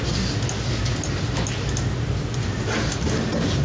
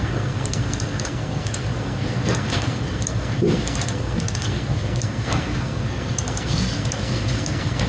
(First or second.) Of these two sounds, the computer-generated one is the second